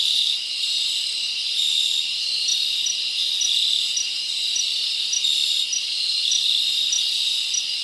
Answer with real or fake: real